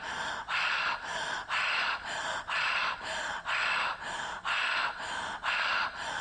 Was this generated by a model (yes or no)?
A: no